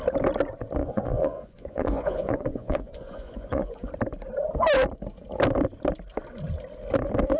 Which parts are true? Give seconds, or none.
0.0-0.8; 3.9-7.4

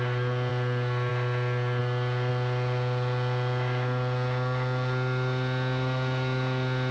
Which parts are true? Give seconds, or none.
0.0-6.9

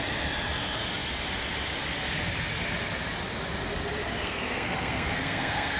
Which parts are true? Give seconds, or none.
0.0-4.2

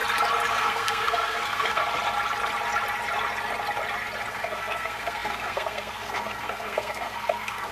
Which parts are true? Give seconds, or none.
0.0-0.5; 1.8-4.3

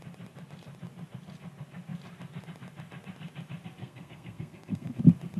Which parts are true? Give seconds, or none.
0.0-3.8; 5.0-5.4